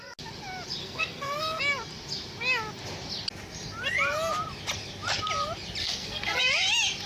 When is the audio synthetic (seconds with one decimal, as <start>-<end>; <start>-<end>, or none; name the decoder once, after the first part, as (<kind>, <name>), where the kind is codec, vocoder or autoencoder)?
0.8-1.6 (codec, SNAC); 5.8-6.4